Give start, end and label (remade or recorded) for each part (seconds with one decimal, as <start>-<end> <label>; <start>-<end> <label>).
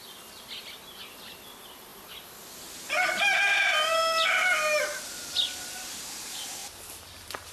0.0-7.5 recorded